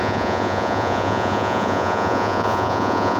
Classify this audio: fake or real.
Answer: fake